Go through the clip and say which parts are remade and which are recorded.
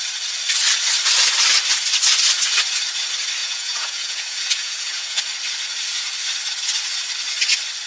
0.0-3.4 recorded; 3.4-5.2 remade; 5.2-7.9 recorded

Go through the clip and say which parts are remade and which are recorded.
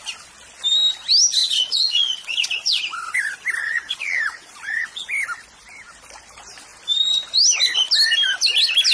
0.0-1.4 recorded; 1.4-2.8 remade; 2.8-3.6 recorded; 3.6-5.1 remade; 5.1-8.9 recorded